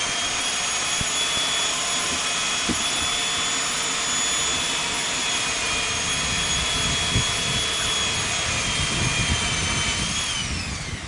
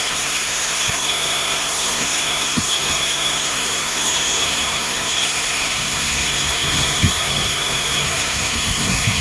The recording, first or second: first